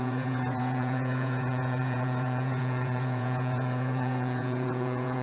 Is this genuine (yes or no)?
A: no